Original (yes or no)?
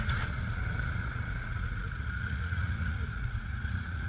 no